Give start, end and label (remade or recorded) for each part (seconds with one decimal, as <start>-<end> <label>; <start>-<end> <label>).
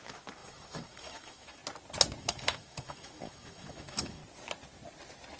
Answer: 0.0-1.6 remade; 1.6-2.2 recorded; 2.2-4.2 remade; 4.2-5.4 recorded